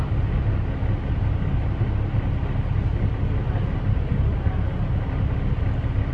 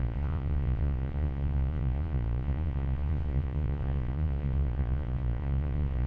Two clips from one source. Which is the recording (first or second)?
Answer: first